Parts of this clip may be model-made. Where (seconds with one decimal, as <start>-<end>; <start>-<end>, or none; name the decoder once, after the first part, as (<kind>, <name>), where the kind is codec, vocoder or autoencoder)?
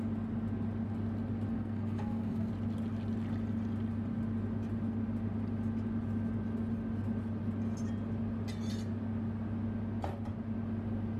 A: 1.5-2.5 (codec, SNAC)